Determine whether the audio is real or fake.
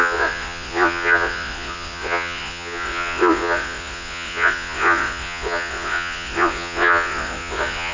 fake